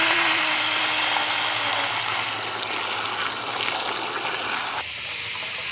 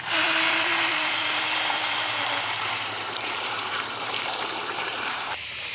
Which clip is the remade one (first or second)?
second